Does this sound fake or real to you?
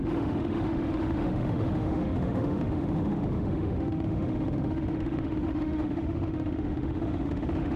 fake